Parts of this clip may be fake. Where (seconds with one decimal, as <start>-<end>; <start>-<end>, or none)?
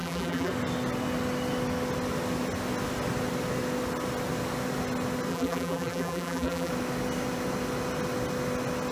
0.0-0.5; 5.3-6.7